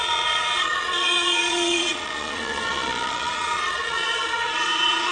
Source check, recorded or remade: remade